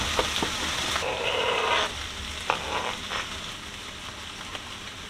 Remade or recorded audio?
recorded